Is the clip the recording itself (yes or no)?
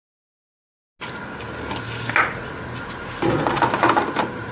yes